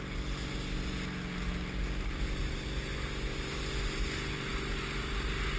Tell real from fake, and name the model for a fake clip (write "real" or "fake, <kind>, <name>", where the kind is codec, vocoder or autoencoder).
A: real